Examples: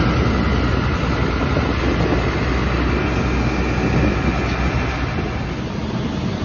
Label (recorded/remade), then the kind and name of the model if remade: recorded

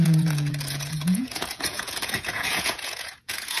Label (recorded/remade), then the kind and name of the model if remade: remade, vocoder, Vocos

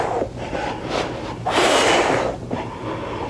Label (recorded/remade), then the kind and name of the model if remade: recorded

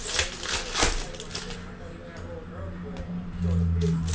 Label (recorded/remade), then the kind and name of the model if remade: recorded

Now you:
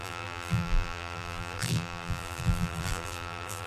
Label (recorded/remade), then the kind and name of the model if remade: remade, vocoder, BigVGAN v2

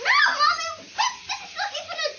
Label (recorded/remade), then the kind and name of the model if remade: recorded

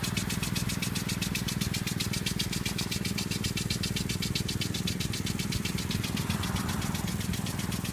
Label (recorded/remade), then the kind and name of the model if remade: recorded